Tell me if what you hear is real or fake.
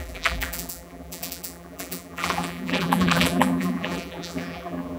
fake